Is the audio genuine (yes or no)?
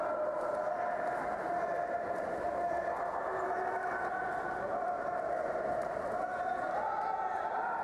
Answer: yes